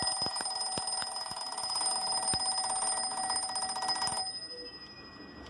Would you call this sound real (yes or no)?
yes